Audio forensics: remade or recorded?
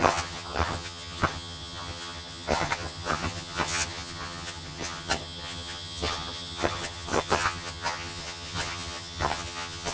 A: remade